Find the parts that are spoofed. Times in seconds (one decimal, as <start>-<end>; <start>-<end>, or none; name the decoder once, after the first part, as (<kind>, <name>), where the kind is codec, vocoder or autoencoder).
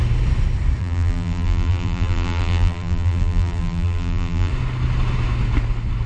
0.8-4.5 (vocoder, BigVGAN v2)